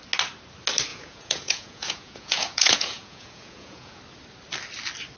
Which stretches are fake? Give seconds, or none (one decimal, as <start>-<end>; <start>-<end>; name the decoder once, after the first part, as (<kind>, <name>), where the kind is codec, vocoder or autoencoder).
0.9-4.0 (vocoder, Vocos)